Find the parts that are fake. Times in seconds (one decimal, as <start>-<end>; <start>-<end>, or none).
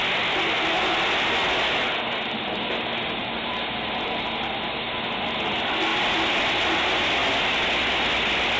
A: none